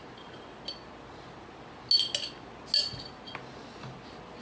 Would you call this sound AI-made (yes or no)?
no